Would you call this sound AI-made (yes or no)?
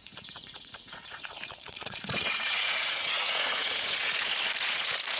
yes